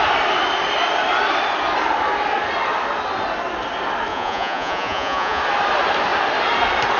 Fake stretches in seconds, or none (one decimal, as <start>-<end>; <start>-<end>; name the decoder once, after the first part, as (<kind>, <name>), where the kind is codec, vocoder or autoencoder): 4.1-5.4 (vocoder, Vocos)